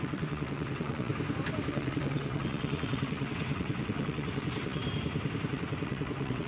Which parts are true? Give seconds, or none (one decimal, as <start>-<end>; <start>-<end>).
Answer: 1.1-1.7; 4.8-5.5